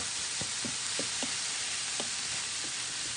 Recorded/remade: recorded